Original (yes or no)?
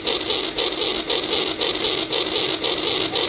yes